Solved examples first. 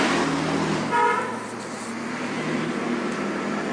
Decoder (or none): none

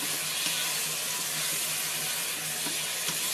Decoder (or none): none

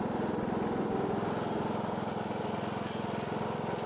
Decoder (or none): none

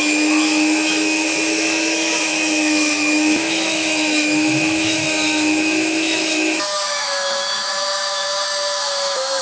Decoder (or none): autoencoder, DAC-VAE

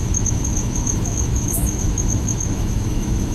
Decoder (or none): autoencoder, DAC-VAE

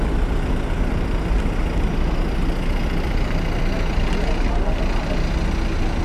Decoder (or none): none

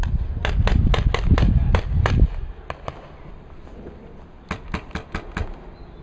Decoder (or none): none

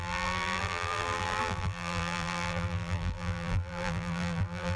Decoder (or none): vocoder, BigVGAN v2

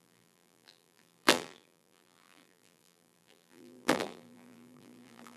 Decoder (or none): vocoder, BigVGAN v2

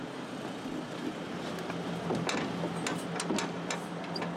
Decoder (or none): none